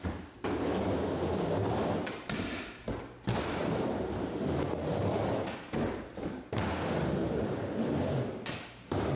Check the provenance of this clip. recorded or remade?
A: recorded